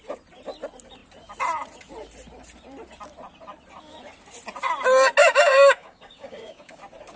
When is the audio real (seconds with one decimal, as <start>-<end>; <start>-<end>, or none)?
0.0-5.2; 6.8-7.2